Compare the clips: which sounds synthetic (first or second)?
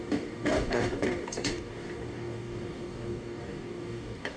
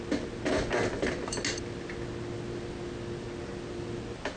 first